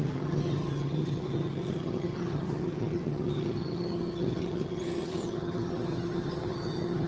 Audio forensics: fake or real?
fake